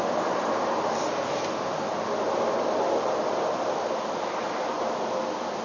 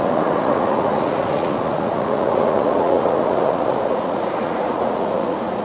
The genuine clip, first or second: first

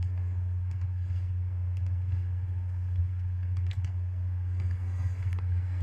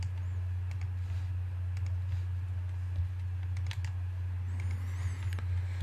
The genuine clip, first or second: second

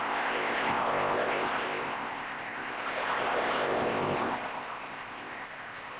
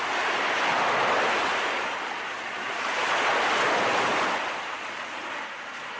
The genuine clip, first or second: second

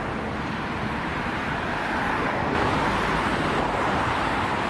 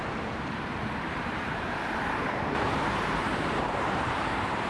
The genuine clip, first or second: first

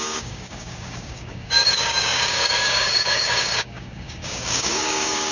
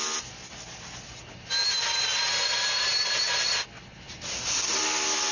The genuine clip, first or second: second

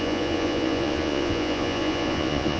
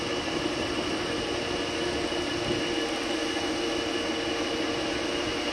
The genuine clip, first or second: second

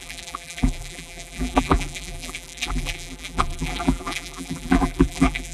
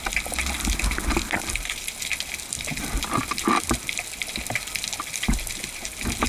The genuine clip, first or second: second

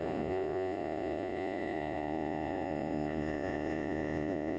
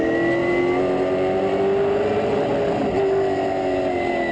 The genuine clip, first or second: second